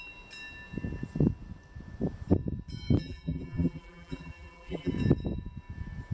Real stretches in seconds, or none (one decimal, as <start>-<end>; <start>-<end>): 0.0-3.0; 4.9-6.1